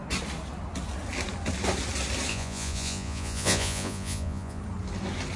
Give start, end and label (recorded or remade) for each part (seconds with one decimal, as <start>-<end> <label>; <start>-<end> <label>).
0.0-2.3 recorded; 2.3-4.6 remade; 4.6-5.4 recorded